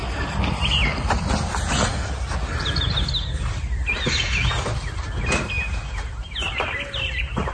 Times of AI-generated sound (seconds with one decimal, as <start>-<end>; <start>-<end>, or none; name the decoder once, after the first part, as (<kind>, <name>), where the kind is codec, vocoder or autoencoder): none